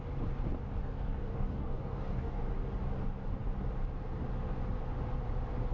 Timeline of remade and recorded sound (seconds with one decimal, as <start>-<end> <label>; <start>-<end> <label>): 0.0-0.8 recorded; 0.8-2.4 remade; 2.4-5.7 recorded